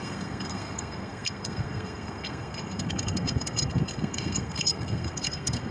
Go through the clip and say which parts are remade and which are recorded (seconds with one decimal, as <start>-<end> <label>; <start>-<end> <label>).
0.0-5.7 remade